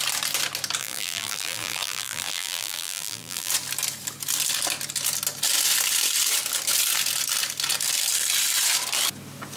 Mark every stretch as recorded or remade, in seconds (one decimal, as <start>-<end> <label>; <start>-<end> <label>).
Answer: 0.0-0.8 recorded; 0.8-3.5 remade; 3.5-9.6 recorded